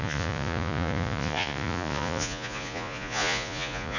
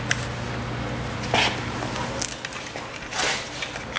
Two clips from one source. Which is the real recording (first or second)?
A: second